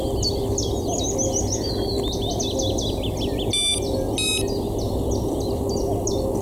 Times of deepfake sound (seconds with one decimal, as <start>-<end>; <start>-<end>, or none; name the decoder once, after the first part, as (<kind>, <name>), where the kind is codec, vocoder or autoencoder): none